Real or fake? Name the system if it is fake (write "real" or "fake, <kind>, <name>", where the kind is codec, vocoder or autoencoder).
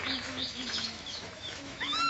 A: fake, autoencoder, DAC-VAE